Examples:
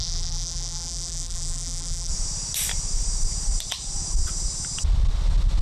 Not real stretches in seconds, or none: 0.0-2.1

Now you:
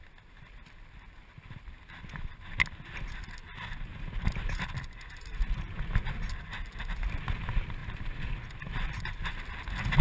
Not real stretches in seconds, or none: none

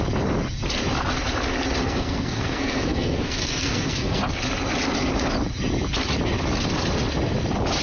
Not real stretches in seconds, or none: 1.8-4.2